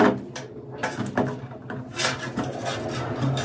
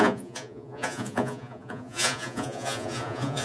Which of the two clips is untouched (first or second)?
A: first